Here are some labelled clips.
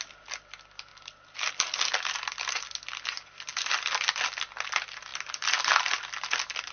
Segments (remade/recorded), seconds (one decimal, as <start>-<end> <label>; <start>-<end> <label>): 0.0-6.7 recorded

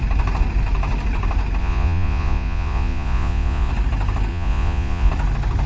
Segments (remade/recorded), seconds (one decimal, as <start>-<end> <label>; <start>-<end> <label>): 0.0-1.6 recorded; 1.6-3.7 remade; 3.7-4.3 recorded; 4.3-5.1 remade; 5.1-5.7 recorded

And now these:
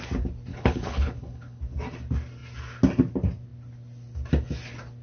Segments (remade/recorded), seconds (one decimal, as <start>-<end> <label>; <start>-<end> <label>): 0.0-0.5 recorded; 0.5-1.6 remade; 1.6-5.0 recorded